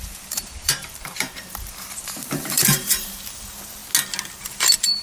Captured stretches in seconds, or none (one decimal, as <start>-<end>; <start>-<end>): 3.8-4.4